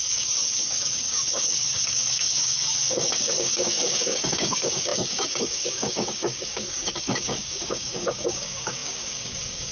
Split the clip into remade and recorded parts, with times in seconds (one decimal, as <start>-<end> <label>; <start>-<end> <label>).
0.0-9.7 remade